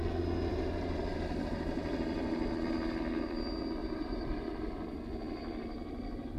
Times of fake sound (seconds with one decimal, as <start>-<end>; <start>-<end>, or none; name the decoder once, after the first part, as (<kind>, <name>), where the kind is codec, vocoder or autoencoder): 0.5-2.5 (vocoder, BigVGAN v2); 3.8-5.0; 5.6-6.4